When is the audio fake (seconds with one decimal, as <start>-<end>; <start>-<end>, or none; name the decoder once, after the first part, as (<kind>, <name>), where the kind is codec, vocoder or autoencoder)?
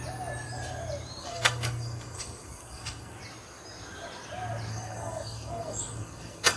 1.2-3.2 (codec, SNAC); 4.7-6.6